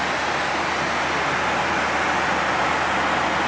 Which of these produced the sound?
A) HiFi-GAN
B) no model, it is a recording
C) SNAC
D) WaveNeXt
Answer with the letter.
B